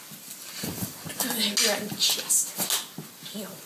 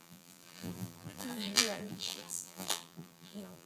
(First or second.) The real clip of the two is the first